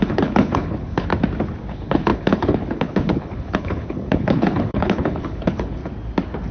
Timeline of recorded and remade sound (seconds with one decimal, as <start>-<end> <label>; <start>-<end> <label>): 0.0-1.1 remade; 1.1-1.7 recorded; 1.7-5.8 remade; 5.8-6.5 recorded